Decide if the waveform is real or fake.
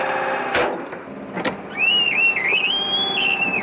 real